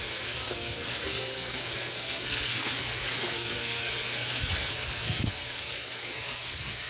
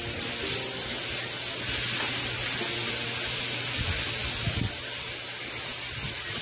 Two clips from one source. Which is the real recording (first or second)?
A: second